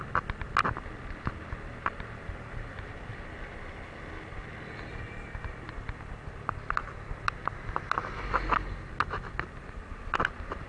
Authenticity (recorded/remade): recorded